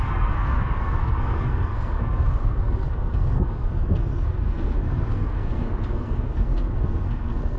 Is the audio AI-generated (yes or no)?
yes